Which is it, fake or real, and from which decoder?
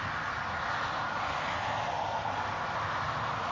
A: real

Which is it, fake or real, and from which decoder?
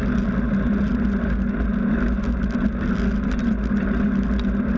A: real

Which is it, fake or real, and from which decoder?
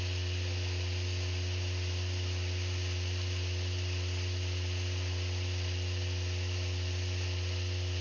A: real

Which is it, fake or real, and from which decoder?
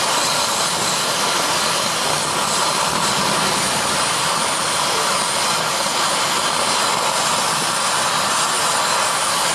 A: real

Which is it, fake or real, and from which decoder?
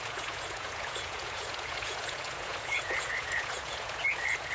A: fake, vocoder, Vocos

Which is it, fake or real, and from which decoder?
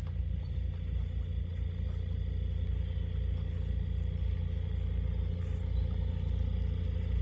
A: real